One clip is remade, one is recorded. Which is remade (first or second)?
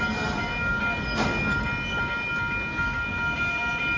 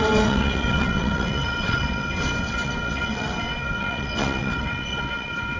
second